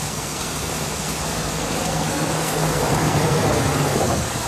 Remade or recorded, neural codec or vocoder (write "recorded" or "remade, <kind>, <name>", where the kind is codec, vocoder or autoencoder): remade, codec, SNAC